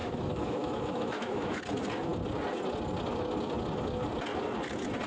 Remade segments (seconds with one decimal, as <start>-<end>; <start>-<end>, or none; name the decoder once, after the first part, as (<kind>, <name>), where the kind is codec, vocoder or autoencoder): 0.0-1.6 (autoencoder, DAC-VAE)

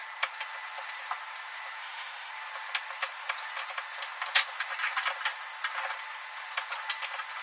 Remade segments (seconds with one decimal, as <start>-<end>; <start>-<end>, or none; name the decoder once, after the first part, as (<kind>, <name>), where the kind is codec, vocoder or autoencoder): 1.8-2.3 (autoencoder, DAC-VAE)